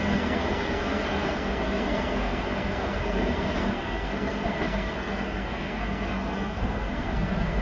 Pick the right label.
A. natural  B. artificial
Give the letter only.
B